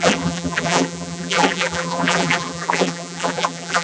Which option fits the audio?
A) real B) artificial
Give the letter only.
B